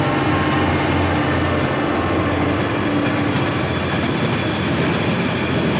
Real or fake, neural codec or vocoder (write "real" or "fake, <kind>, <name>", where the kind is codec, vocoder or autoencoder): real